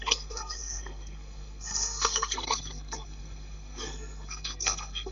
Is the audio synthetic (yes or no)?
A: yes